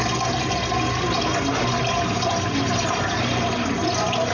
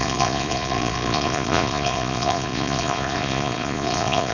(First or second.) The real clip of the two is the first